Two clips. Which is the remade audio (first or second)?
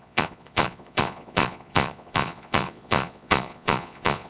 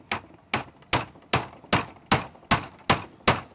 first